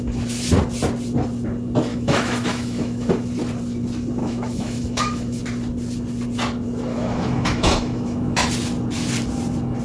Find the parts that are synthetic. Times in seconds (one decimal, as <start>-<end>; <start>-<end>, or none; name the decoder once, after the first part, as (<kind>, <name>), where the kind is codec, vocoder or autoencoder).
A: 1.9-3.1 (autoencoder, DAC-VAE); 4.2-5.4; 6.9-8.5